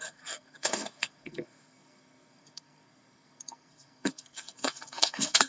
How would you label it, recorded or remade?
remade